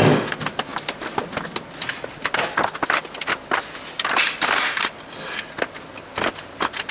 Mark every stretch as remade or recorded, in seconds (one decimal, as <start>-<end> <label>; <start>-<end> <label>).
0.0-6.9 recorded